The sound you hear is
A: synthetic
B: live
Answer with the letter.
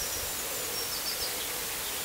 B